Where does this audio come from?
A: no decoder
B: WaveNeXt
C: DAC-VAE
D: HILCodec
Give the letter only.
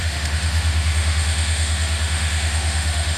C